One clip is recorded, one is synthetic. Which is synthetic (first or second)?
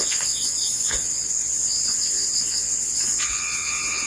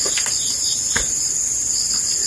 first